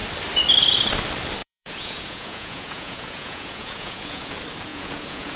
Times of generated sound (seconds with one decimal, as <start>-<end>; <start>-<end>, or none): 1.4-4.3; 4.7-5.4